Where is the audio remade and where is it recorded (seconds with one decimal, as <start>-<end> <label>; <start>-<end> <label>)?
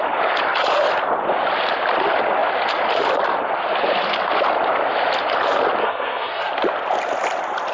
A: 0.0-5.8 recorded; 5.8-6.5 remade; 6.5-7.7 recorded